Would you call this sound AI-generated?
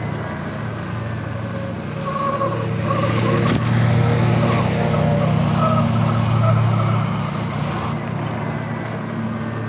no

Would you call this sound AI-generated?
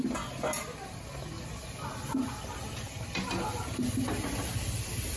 no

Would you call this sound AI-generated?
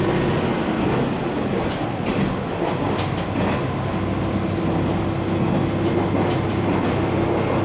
no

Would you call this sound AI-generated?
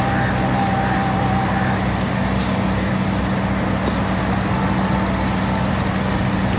no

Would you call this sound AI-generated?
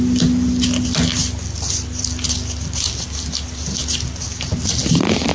no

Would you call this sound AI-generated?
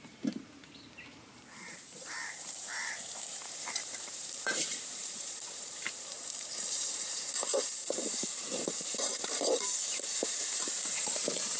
yes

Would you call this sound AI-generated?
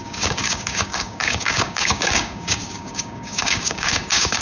yes